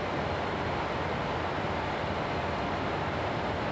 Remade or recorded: recorded